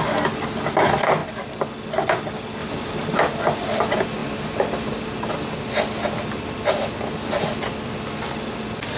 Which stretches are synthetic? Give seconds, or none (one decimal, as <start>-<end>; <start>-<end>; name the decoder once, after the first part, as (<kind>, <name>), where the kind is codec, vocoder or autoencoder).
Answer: 2.6-3.2 (vocoder, BigVGAN v2)